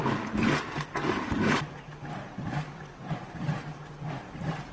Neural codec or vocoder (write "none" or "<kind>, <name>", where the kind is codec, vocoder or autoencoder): vocoder, BigVGAN v2